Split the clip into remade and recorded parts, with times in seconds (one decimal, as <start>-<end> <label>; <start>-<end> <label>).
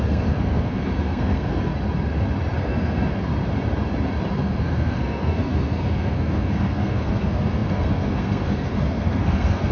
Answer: 0.0-1.7 remade; 1.7-2.6 recorded; 2.6-3.3 remade; 3.3-4.3 recorded; 4.3-9.7 remade